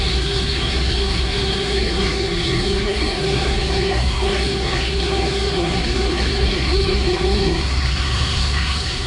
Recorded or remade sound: remade